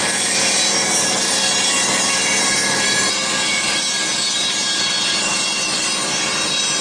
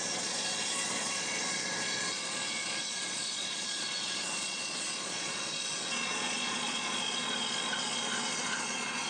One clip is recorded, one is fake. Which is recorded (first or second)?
first